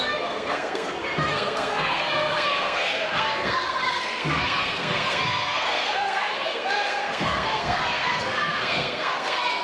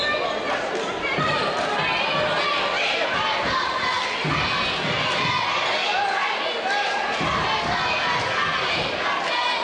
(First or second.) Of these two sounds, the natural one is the second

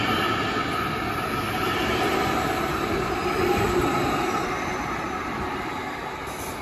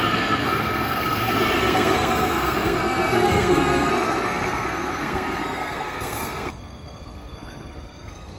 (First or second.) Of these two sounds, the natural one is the first